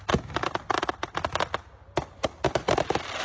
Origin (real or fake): real